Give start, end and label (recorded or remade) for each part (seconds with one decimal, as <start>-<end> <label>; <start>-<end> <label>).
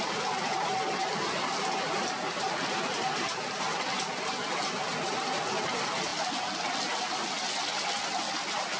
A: 0.0-8.8 recorded